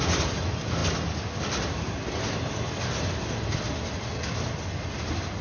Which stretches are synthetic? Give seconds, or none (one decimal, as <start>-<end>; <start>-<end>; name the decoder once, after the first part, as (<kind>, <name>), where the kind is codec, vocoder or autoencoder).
none